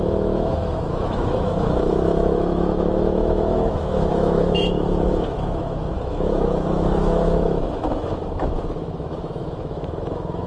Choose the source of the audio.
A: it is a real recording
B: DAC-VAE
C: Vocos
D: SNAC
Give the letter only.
B